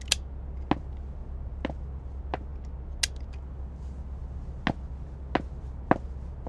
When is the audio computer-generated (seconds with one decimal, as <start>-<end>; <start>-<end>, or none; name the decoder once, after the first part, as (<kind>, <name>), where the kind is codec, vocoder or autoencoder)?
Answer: none